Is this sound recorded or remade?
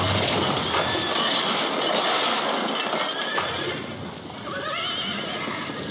recorded